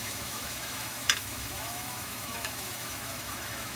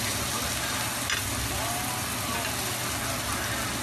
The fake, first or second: first